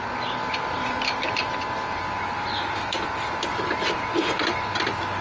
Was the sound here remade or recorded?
remade